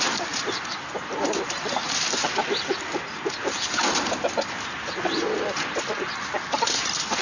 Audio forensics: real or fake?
real